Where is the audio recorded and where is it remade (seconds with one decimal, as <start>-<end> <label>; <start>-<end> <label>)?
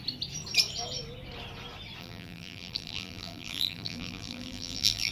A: 0.0-2.0 recorded; 2.0-5.1 remade